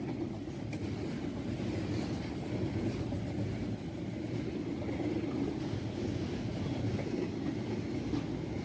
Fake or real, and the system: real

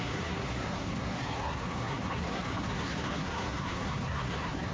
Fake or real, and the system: fake, codec, SNAC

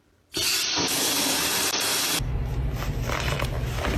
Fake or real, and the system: real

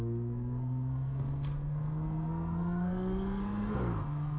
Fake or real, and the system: fake, codec, SNAC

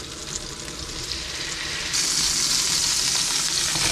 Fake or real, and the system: real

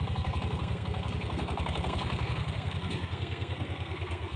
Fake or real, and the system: fake, codec, SNAC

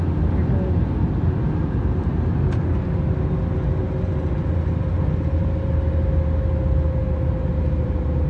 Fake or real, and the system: real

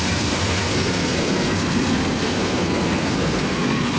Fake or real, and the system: fake, codec, SNAC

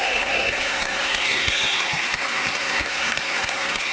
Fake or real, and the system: fake, codec, SNAC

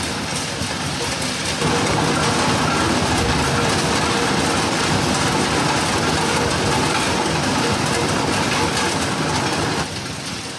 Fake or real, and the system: real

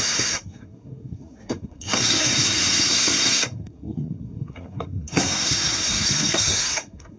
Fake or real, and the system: fake, codec, SNAC